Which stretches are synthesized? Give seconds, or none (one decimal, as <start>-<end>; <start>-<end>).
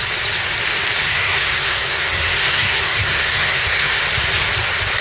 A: 1.0-4.0